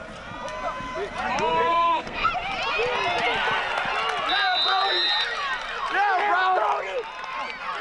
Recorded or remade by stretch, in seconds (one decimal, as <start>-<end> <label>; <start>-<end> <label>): 0.0-1.5 recorded; 1.5-2.3 remade; 2.3-7.8 recorded